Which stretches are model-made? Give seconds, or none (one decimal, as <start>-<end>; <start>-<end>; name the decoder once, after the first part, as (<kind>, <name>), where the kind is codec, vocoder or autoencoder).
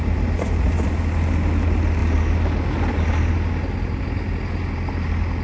none